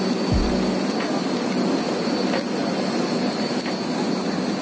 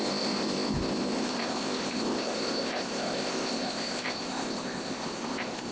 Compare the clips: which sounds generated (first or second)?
second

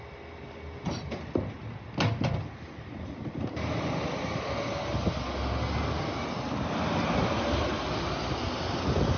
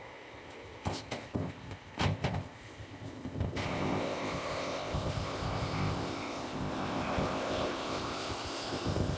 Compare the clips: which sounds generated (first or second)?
second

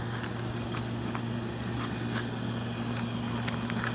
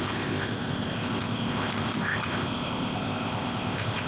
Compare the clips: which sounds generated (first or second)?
second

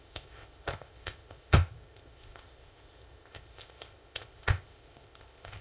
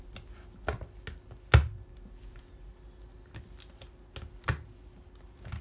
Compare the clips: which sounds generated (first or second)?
first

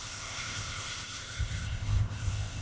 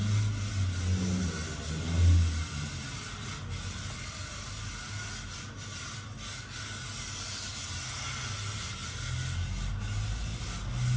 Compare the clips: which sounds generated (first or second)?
first